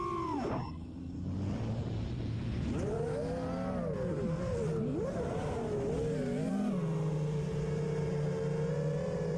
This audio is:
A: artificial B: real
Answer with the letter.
B